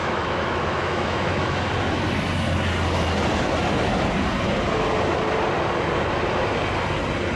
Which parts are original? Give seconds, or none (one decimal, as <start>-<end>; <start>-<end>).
1.7-7.4